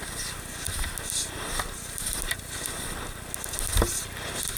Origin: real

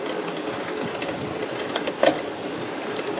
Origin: real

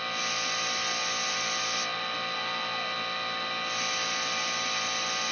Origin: real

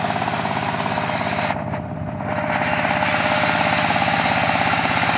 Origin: real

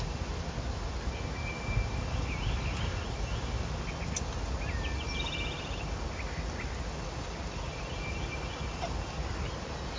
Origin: real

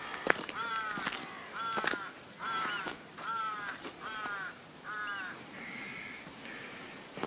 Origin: real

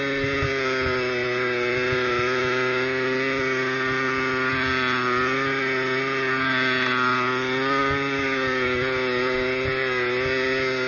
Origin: real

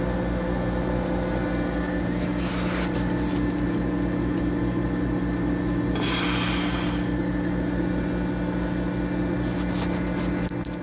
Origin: real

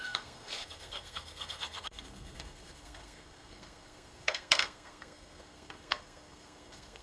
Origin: fake